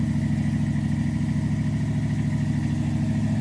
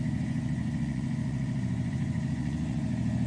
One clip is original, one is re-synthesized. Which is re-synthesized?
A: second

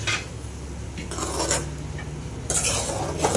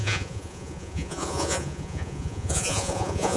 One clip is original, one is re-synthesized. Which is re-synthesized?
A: second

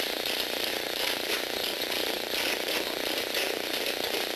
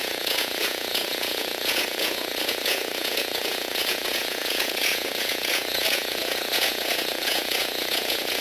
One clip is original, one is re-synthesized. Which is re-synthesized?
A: second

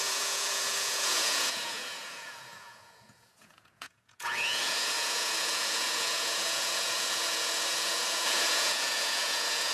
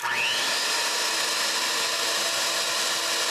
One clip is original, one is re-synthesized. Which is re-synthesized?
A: first